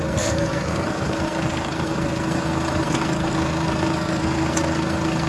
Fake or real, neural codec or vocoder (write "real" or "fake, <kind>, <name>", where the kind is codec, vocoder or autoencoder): fake, codec, SNAC